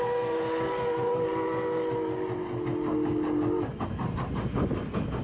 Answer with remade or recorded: recorded